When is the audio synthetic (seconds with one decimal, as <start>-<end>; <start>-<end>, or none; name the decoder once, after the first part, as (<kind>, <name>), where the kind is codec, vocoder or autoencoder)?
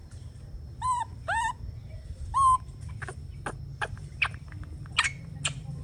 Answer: 0.0-2.9 (vocoder, BigVGAN v2); 3.7-4.5